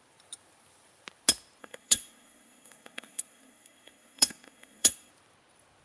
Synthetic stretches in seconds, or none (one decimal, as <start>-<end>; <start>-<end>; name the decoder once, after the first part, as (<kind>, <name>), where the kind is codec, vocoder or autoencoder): 1.6-5.1 (codec, SNAC)